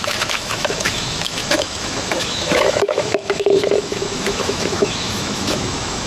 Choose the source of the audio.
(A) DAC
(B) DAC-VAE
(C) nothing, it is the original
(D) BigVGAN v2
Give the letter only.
B